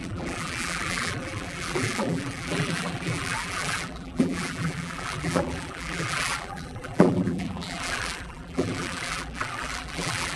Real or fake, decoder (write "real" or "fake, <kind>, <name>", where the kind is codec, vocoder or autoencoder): fake, vocoder, BigVGAN v2